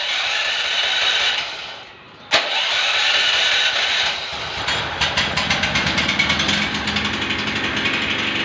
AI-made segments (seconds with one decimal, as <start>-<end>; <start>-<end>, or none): none